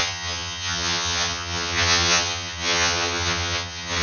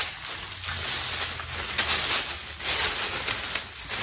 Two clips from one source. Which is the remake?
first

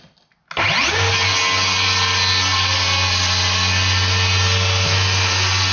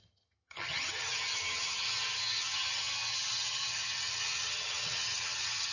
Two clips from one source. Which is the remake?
second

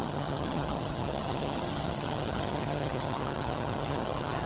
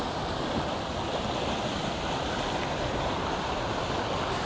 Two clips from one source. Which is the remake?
first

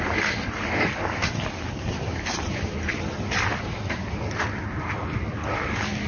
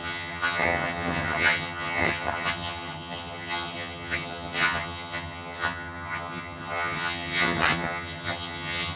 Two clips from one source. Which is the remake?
second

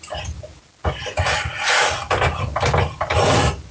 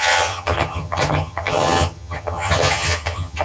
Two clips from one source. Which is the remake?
second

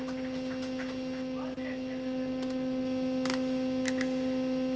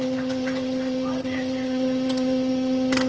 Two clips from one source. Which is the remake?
second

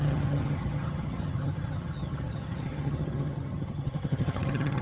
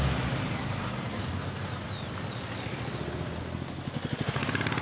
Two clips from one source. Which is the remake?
first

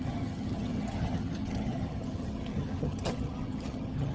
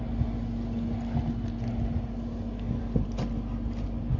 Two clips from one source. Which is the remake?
first